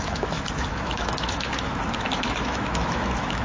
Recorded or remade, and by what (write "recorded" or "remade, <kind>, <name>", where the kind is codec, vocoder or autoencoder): remade, autoencoder, DAC-VAE